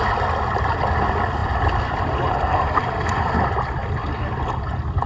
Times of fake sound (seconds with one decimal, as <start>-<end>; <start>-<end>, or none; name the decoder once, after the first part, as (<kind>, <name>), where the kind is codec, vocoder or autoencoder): none